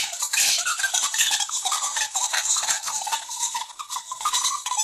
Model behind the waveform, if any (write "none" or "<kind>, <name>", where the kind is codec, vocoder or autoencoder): codec, SNAC